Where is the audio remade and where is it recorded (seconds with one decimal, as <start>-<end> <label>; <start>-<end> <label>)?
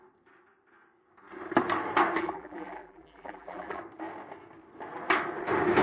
0.0-2.2 recorded; 2.2-3.8 remade; 3.8-5.8 recorded